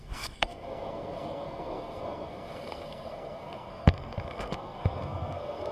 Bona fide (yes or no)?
no